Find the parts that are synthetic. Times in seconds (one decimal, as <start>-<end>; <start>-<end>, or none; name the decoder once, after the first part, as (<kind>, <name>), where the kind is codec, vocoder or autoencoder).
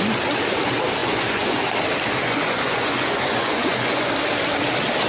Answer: 1.0-1.6 (vocoder, Vocos); 2.2-4.1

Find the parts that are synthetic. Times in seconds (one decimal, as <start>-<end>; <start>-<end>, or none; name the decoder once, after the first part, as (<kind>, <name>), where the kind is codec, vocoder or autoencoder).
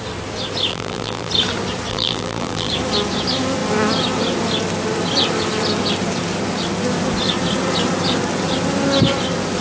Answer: 0.7-1.3 (vocoder, BigVGAN v2); 1.9-2.7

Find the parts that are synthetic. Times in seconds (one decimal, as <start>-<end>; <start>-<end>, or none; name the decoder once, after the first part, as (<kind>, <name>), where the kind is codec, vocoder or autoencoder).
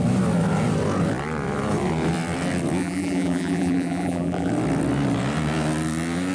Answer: 2.8-4.5 (vocoder, BigVGAN v2)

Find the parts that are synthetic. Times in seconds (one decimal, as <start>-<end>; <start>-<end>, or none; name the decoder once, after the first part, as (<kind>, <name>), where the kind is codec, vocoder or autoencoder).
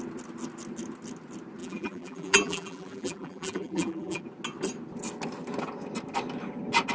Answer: 1.6-4.2 (vocoder, BigVGAN v2)